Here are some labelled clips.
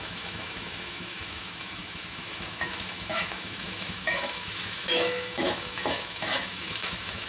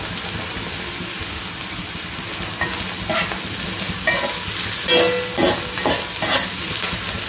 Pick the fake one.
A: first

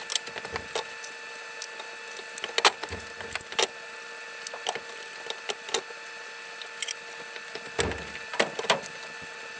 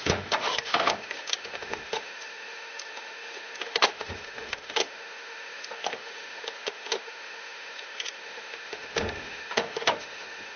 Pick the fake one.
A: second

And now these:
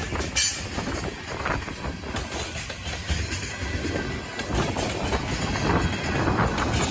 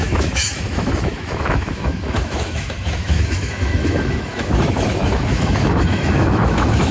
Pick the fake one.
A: second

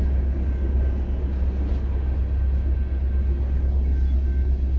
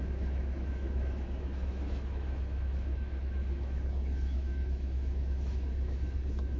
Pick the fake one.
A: second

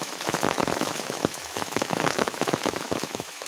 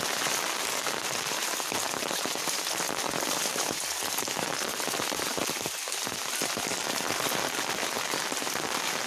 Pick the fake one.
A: first